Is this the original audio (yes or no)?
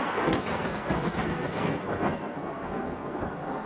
no